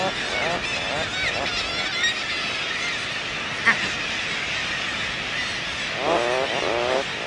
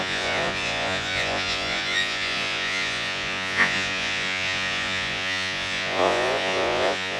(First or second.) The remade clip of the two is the second